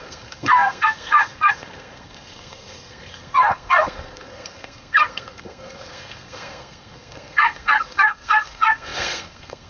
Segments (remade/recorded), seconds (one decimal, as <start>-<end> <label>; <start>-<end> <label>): 0.0-9.7 remade